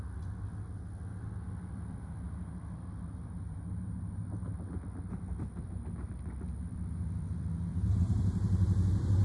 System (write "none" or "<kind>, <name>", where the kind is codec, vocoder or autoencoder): vocoder, BigVGAN v2